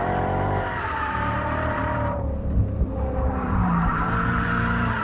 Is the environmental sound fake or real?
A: fake